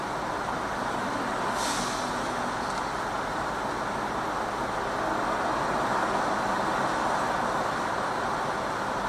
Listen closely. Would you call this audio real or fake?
real